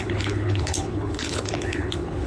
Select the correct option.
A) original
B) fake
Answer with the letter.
B